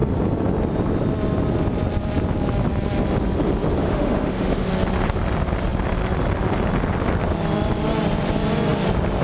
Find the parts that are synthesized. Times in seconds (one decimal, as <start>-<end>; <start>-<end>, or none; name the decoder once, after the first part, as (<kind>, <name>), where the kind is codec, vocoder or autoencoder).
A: 3.8-4.7 (autoencoder, DAC-VAE)